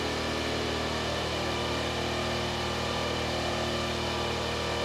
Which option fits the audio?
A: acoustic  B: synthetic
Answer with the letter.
A